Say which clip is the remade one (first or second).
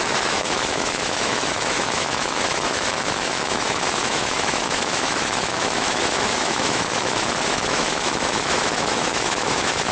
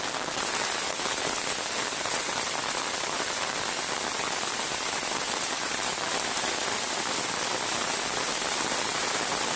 first